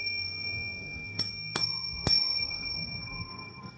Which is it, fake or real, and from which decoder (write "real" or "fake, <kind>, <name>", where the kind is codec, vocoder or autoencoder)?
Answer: fake, codec, SNAC